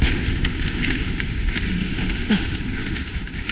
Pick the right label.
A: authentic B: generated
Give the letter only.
B